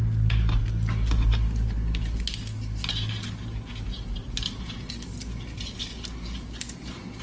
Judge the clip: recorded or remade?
recorded